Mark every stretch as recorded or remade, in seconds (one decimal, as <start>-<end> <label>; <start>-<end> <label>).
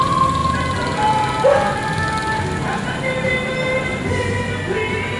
0.0-5.2 recorded